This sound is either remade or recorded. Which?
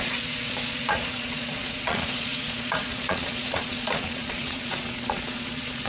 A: remade